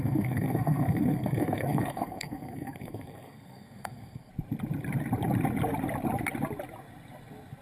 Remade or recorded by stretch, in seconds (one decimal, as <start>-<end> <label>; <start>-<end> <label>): 0.0-4.3 remade; 4.3-7.6 recorded

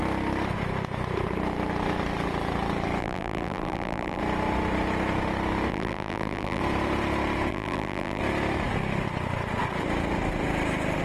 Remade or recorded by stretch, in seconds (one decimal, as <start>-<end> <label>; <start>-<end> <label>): 0.0-3.0 recorded; 3.0-4.2 remade; 4.2-5.7 recorded; 5.7-6.6 remade; 6.6-7.5 recorded; 7.5-8.2 remade; 8.2-11.0 recorded

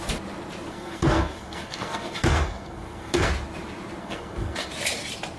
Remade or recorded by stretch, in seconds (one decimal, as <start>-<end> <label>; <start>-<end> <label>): 0.0-0.7 recorded; 0.7-3.3 remade; 3.3-4.0 recorded; 4.0-4.7 remade; 4.7-5.4 recorded

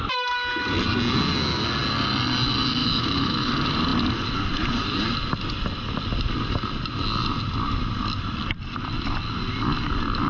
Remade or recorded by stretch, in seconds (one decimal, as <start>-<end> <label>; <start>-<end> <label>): 0.0-2.8 recorded; 2.8-3.5 remade; 3.5-10.3 recorded

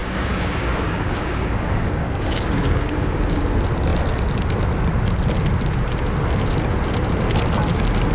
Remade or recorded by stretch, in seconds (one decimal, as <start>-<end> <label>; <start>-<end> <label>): 0.0-3.4 remade; 3.4-8.1 recorded

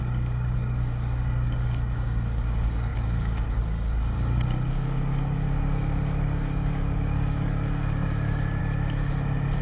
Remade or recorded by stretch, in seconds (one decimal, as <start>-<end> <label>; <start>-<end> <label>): 0.0-8.6 remade; 8.6-9.6 recorded

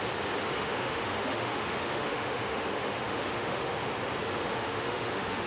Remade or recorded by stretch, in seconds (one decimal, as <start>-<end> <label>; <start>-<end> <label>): 0.0-0.4 recorded; 0.4-3.7 remade; 3.7-4.2 recorded; 4.2-5.5 remade